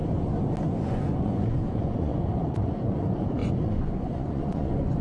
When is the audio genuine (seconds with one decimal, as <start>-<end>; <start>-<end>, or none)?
0.0-0.8